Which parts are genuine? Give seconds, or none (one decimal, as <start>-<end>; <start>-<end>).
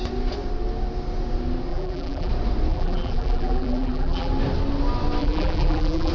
0.0-1.7; 2.3-2.7; 4.3-5.2